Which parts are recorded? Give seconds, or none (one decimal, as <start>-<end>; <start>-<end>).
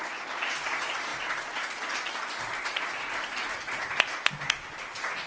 0.0-5.3